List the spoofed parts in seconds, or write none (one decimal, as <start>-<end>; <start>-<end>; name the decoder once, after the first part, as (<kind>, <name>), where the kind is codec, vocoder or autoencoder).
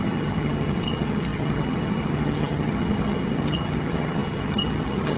0.0-5.2 (vocoder, HiFi-GAN)